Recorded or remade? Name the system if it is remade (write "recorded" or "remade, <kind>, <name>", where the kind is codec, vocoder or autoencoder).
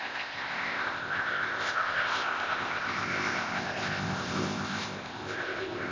remade, codec, ZipCodec